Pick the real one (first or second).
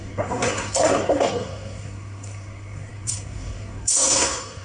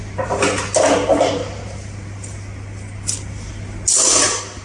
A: second